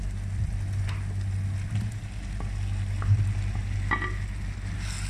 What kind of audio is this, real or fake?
real